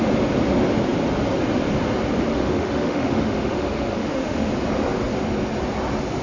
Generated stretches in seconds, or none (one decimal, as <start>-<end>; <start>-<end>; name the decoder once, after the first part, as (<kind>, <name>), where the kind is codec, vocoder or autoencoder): 2.3-4.5 (autoencoder, DAC-VAE)